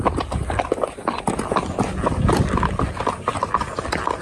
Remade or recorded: recorded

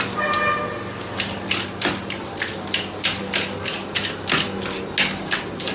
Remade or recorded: recorded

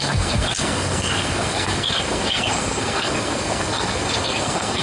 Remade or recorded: remade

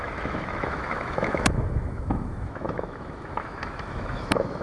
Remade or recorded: remade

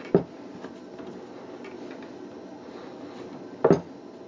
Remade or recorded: recorded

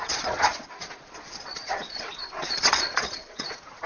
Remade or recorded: remade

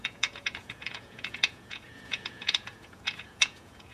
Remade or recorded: remade